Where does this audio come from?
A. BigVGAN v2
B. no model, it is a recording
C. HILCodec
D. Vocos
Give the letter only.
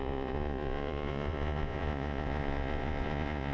D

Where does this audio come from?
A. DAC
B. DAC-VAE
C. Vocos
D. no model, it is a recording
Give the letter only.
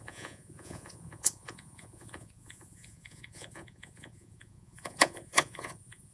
C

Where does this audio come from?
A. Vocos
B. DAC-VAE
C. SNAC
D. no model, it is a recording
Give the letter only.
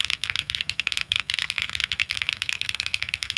C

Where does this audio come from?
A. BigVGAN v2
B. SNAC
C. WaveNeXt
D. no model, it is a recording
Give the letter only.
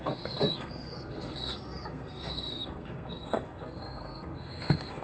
B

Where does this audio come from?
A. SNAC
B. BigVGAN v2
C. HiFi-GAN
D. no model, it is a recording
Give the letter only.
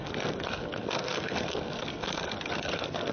A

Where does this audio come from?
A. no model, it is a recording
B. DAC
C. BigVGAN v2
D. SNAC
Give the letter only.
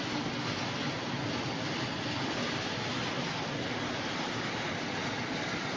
A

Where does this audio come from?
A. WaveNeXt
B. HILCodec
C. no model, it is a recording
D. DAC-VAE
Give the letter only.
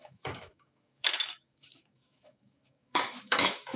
D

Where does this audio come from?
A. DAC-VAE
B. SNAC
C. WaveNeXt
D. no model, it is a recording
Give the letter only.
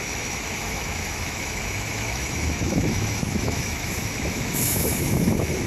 A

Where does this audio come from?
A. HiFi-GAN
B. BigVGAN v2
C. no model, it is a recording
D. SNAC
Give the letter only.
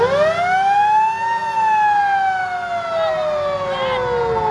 C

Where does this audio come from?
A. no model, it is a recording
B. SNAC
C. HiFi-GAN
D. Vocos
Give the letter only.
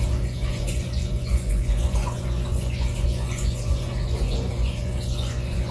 D